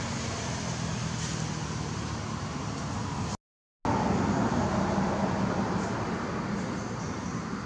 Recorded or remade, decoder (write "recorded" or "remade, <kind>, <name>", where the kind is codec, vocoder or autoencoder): recorded